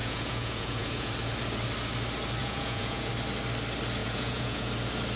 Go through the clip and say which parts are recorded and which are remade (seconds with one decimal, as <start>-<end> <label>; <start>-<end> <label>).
0.0-1.1 remade; 1.1-2.4 recorded; 2.4-3.1 remade; 3.1-4.0 recorded; 4.0-4.7 remade; 4.7-5.2 recorded